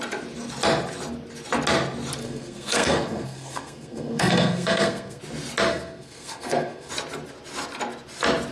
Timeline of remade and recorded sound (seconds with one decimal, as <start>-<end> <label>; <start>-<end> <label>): 0.0-2.2 recorded; 2.2-5.2 remade; 5.2-5.7 recorded; 5.7-6.9 remade; 6.9-8.5 recorded